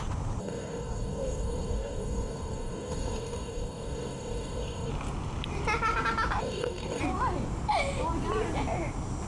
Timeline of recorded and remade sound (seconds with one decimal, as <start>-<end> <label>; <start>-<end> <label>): 0.0-0.4 recorded; 0.4-4.9 remade; 4.9-6.4 recorded; 6.4-7.0 remade; 7.0-9.3 recorded